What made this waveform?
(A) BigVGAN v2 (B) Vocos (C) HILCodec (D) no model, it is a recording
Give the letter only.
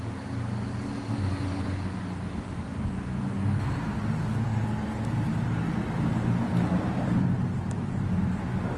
D